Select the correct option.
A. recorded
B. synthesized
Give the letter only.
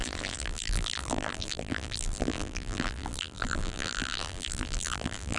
B